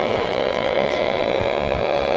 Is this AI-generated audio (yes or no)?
yes